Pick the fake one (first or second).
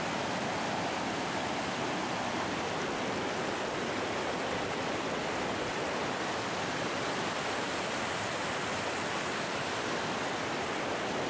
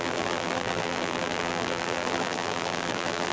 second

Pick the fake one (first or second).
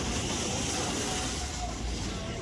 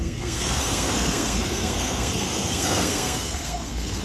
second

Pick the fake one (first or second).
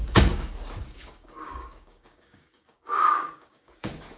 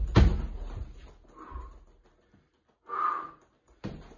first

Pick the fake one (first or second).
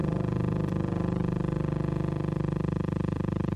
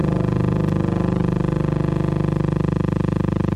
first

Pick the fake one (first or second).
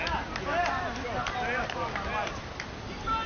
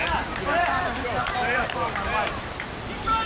second